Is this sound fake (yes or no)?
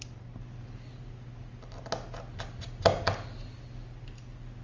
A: no